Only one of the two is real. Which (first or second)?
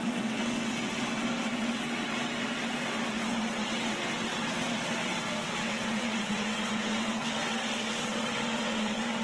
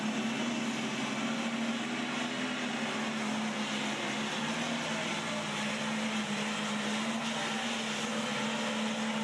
second